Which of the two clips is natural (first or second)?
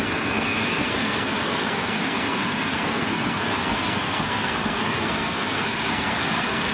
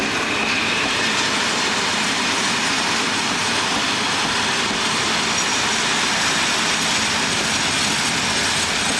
second